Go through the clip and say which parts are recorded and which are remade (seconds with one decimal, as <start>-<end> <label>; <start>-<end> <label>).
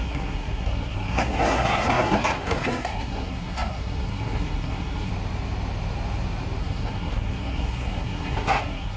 0.0-5.1 remade; 5.1-6.6 recorded; 6.6-9.0 remade